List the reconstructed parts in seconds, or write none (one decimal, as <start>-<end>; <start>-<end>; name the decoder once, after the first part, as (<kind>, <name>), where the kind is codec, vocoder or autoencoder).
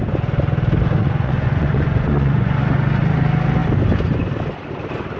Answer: 1.0-3.0 (vocoder, Vocos)